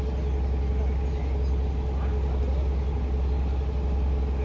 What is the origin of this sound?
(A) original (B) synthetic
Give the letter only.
A